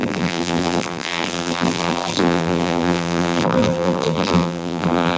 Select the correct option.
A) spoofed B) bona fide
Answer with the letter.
A